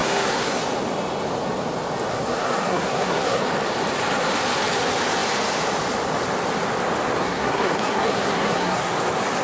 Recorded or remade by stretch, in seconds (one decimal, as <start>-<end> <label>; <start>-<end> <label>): 0.0-0.6 remade; 0.6-2.1 recorded; 2.1-3.4 remade; 3.4-7.2 recorded; 7.2-8.9 remade; 8.9-9.4 recorded